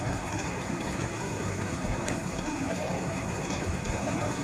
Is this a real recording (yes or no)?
no